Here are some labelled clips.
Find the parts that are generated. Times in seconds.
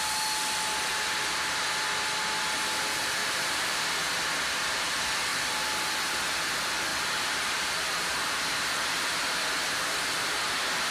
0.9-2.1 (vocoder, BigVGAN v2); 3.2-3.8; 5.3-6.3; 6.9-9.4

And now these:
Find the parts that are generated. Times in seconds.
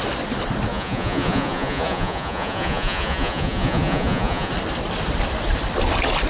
0.7-4.5 (vocoder, Vocos)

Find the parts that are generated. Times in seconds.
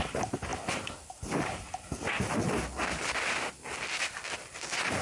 none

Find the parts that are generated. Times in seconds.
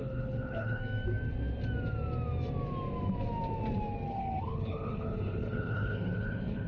0.0-0.8 (codec, HILCodec); 4.1-6.7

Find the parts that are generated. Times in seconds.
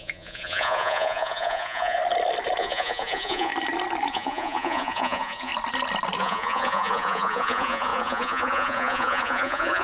0.0-2.0 (vocoder, Vocos); 2.6-3.5; 4.1-5.5; 6.2-9.8